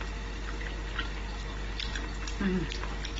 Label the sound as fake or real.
real